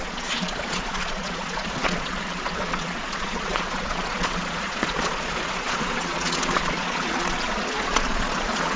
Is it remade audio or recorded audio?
remade